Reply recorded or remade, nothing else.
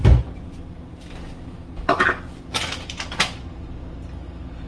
recorded